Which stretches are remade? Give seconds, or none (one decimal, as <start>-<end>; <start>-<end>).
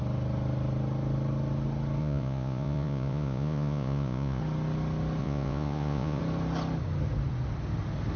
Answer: 2.0-4.4; 5.2-6.2